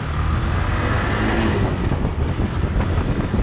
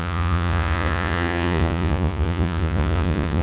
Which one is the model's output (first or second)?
second